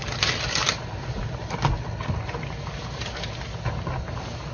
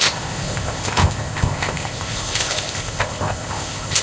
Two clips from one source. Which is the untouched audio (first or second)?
first